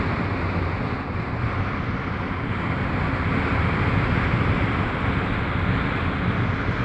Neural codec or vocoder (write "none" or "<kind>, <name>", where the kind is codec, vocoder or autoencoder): none